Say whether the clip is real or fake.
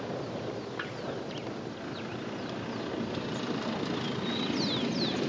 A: real